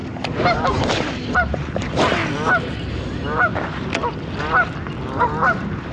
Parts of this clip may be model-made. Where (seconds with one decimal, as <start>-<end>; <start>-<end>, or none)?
0.0-2.2; 2.9-3.5; 5.2-5.9

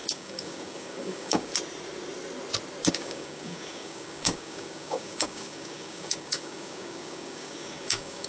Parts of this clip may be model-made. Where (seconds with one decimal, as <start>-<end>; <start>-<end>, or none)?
0.0-1.5; 2.9-8.3

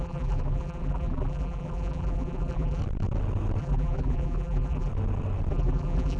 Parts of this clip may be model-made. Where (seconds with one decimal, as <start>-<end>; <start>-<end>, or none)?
0.0-2.8; 3.6-4.9; 5.5-6.2

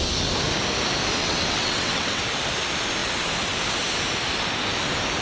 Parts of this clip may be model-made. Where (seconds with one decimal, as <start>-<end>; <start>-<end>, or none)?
1.2-2.2

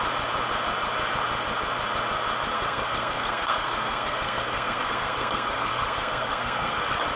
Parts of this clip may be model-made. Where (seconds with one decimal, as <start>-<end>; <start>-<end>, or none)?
2.5-6.8

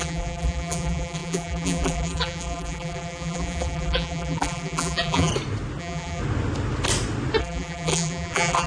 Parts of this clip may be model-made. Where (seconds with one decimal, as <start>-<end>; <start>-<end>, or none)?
0.0-5.3; 5.8-6.2; 7.4-8.7

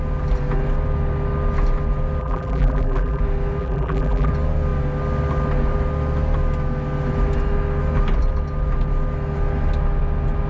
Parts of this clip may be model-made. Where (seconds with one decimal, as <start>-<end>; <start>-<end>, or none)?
2.2-3.2; 3.6-4.3

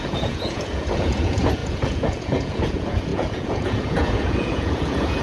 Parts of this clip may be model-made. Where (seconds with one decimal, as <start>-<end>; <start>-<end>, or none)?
0.0-5.2